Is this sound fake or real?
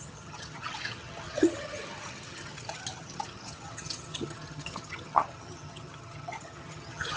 fake